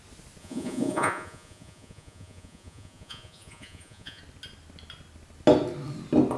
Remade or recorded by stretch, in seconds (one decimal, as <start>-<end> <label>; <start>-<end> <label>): 0.0-0.4 recorded; 0.4-4.2 remade; 4.2-6.4 recorded